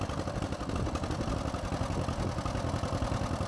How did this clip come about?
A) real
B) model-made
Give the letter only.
A